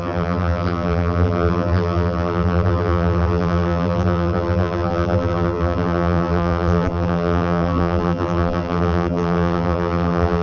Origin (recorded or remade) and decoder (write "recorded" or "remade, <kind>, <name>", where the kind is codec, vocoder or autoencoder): remade, vocoder, BigVGAN v2